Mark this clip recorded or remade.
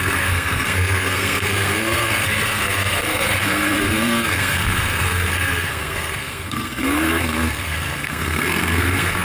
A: remade